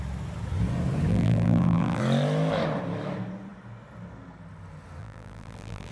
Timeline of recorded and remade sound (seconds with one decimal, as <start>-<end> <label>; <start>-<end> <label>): 0.0-1.1 recorded; 1.1-2.0 remade; 2.0-5.0 recorded; 5.0-5.9 remade